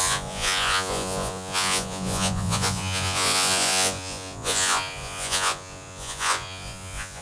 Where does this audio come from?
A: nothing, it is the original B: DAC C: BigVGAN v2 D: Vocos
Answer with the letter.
D